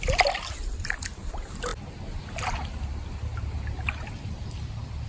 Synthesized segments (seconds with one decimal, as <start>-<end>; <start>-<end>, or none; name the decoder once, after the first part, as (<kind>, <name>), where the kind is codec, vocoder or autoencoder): none